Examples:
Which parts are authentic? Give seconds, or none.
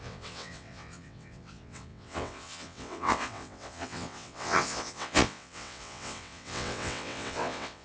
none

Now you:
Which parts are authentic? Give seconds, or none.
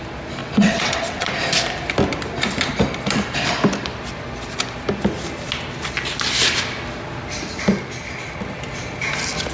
0.0-0.4; 1.3-9.5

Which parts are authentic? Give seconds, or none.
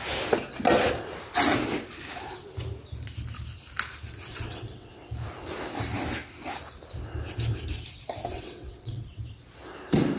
0.0-4.3; 4.9-8.3; 9.2-10.2